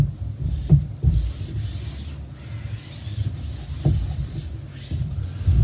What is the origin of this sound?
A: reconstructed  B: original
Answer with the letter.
B